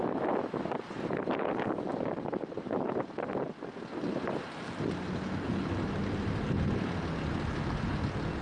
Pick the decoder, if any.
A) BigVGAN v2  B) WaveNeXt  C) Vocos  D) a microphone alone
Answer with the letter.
D